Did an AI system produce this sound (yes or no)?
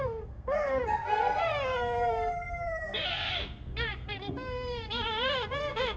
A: yes